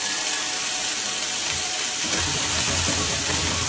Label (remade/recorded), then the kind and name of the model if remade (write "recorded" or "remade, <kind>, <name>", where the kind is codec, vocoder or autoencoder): recorded